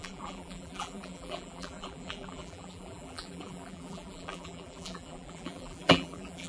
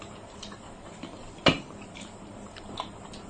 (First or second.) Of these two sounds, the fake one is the first